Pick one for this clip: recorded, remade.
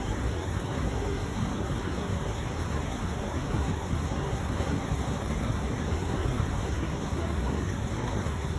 remade